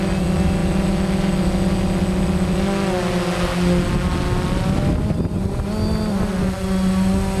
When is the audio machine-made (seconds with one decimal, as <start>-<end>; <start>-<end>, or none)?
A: none